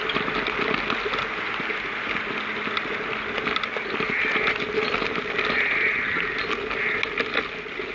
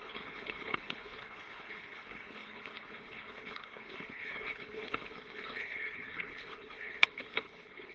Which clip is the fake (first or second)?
second